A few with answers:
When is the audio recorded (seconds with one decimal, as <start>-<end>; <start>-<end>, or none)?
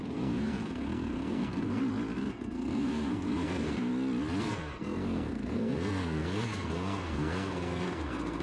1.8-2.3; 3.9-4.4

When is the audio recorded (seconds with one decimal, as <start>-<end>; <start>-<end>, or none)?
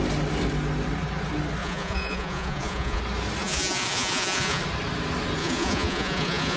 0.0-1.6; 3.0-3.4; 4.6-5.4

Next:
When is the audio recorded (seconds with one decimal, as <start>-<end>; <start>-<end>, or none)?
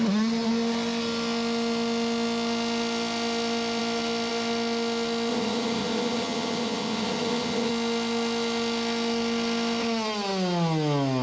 0.0-5.3; 7.7-11.2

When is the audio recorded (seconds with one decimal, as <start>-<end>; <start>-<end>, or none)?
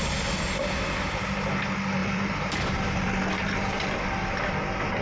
0.0-2.0; 3.1-5.0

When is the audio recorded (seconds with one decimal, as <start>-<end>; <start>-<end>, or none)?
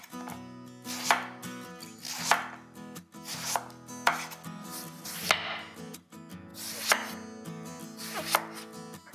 0.0-9.1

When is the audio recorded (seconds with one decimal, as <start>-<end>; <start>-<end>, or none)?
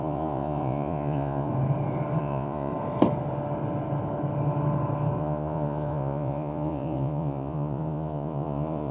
1.5-2.2; 2.7-5.2